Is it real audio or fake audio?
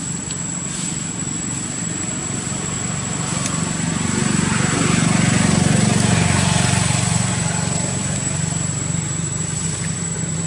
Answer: real